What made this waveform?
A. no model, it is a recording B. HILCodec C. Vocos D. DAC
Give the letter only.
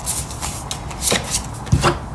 A